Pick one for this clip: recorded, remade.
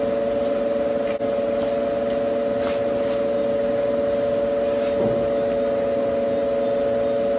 recorded